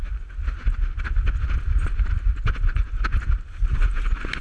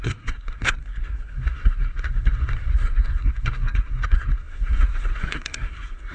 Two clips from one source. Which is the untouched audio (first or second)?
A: first